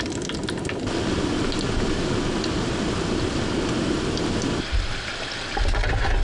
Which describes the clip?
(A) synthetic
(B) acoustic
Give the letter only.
B